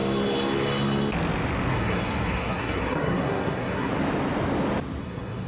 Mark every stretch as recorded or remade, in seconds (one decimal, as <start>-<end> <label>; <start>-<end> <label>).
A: 0.0-1.7 recorded; 1.7-3.9 remade; 3.9-5.0 recorded; 5.0-5.5 remade

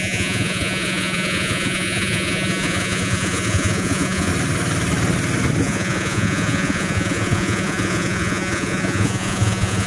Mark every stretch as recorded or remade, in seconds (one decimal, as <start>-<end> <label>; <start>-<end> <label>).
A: 0.0-4.3 remade; 4.3-5.6 recorded; 5.6-9.9 remade

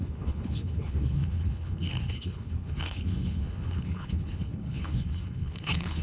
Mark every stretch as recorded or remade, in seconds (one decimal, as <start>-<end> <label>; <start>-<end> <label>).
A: 0.0-6.0 remade

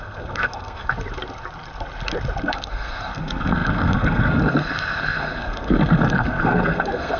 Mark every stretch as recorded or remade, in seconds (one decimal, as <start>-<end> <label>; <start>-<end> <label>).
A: 0.0-0.9 remade; 0.9-2.4 recorded; 2.4-7.2 remade

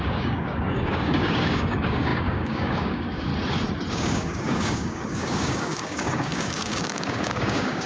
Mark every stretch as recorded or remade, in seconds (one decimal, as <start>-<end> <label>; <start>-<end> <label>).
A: 0.0-3.3 remade; 3.3-3.9 recorded; 3.9-7.9 remade

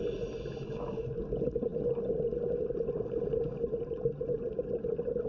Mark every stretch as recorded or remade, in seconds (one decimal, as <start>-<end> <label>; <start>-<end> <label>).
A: 0.0-5.3 recorded

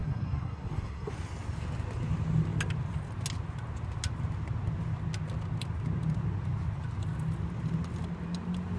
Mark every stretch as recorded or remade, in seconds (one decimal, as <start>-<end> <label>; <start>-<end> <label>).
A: 0.0-1.1 remade; 1.1-8.8 recorded